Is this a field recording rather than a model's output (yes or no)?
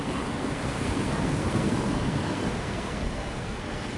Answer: no